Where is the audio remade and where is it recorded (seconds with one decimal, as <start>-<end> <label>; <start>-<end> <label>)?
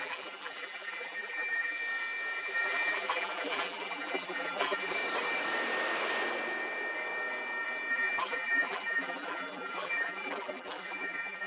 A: 0.0-1.8 remade; 1.8-2.4 recorded; 2.4-5.0 remade; 5.0-7.9 recorded; 7.9-11.5 remade